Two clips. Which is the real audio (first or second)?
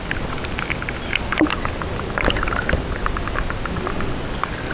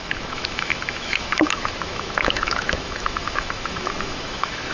first